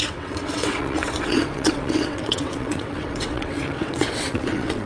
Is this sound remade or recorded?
remade